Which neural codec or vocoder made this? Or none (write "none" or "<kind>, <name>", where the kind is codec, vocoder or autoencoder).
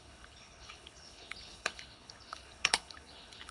codec, HILCodec